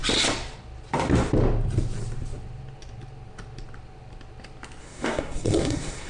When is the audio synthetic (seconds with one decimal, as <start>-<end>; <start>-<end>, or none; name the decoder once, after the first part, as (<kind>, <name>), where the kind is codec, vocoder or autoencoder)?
4.8-6.1 (codec, SNAC)